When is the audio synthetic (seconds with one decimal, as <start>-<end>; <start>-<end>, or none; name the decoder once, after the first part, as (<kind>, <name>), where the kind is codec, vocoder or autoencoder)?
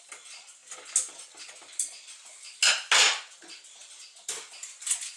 none